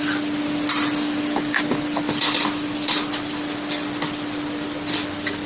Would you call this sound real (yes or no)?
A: yes